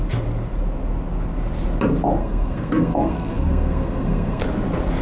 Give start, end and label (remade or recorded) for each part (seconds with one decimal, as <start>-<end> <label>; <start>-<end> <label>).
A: 0.0-2.2 recorded; 2.2-4.4 remade; 4.4-5.0 recorded

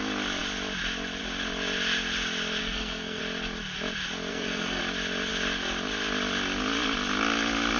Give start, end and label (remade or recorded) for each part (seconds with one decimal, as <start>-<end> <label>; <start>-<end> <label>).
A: 0.0-2.6 recorded; 2.6-3.2 remade; 3.2-4.3 recorded; 4.3-4.8 remade; 4.8-7.8 recorded

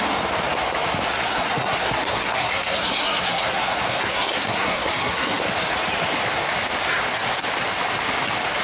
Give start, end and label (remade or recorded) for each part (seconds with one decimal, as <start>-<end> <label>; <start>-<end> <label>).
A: 0.0-1.1 recorded; 1.1-5.4 remade; 5.4-8.6 recorded

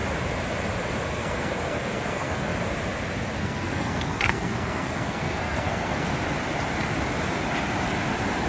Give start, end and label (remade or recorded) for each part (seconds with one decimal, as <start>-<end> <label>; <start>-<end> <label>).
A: 0.0-1.1 recorded; 1.1-2.5 remade; 2.5-3.4 recorded; 3.4-6.1 remade; 6.1-8.5 recorded

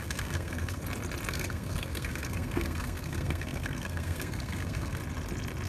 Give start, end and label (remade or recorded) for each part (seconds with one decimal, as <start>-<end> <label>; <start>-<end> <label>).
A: 0.0-0.8 remade; 0.8-1.3 recorded; 1.3-5.0 remade; 5.0-5.7 recorded

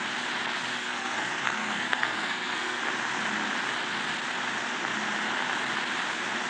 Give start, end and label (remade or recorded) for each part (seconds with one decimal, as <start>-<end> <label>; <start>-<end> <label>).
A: 0.0-0.7 recorded; 0.7-2.8 remade; 2.8-6.5 recorded